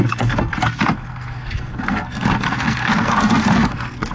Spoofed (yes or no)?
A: yes